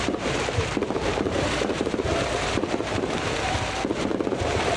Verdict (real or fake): fake